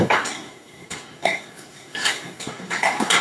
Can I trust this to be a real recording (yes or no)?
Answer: no